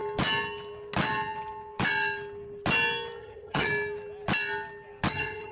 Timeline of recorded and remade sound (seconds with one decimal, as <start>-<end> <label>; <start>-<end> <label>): 0.0-3.2 recorded; 3.2-3.7 remade; 3.7-5.1 recorded; 5.1-5.5 remade